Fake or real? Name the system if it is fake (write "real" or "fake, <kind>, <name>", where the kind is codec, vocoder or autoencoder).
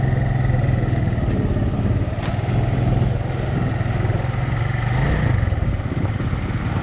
real